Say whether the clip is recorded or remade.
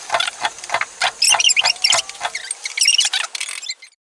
remade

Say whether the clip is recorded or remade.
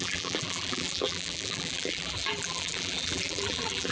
remade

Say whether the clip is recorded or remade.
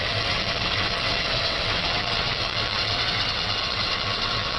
remade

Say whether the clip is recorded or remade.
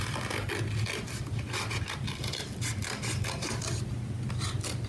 recorded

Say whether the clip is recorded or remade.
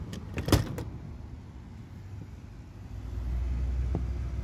recorded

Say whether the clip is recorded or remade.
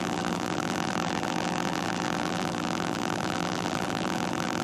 remade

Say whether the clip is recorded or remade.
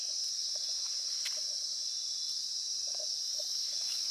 recorded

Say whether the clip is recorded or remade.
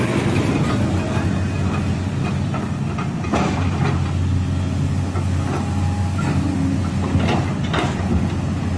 recorded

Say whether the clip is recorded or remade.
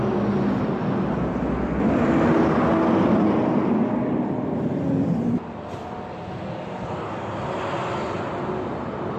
recorded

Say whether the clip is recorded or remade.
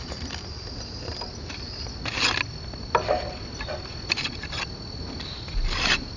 recorded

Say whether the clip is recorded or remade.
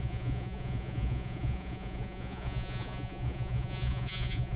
remade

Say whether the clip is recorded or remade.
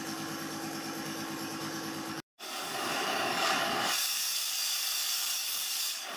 remade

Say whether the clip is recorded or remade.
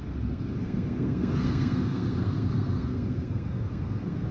remade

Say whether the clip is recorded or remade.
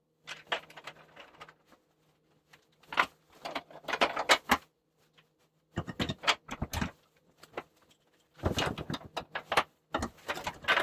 recorded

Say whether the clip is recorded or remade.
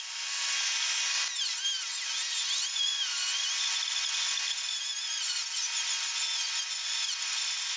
recorded